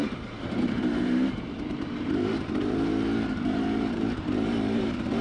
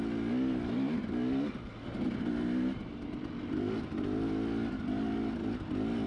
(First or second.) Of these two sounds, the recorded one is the second